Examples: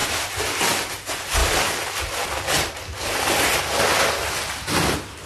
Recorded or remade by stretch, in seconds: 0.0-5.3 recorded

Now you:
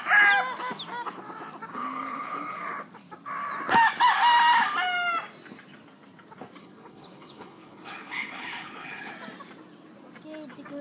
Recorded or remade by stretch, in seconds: 0.0-1.7 recorded; 1.7-2.6 remade; 2.6-6.6 recorded; 6.6-9.1 remade; 9.1-10.8 recorded

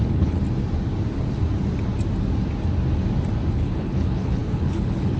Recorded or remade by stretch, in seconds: 0.0-0.4 remade; 0.4-3.5 recorded; 3.5-5.2 remade

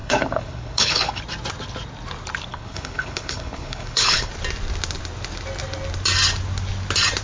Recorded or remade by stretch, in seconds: 0.0-1.2 remade; 1.2-2.5 recorded; 2.5-4.3 remade; 4.3-7.2 recorded

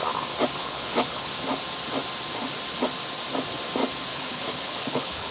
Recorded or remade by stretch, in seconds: 0.0-0.6 recorded; 0.6-1.2 remade; 1.2-4.1 recorded; 4.1-5.3 remade

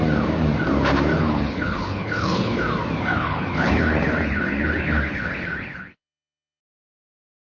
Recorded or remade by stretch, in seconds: 0.0-1.1 recorded; 1.1-2.6 remade; 2.6-3.1 recorded; 3.1-6.6 remade; 6.6-7.4 recorded

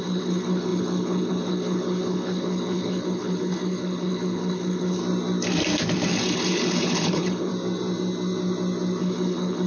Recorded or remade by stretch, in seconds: 0.0-5.0 remade; 5.0-6.1 recorded; 6.1-7.5 remade; 7.5-9.0 recorded; 9.0-9.7 remade